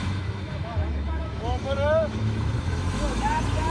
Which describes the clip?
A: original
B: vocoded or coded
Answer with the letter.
B